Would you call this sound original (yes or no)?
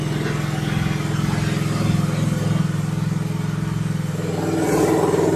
yes